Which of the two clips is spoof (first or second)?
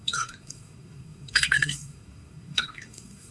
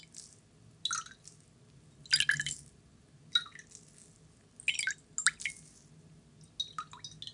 first